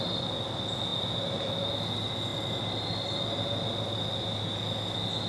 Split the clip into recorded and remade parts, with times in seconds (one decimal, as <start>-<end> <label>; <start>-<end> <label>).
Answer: 0.0-5.3 recorded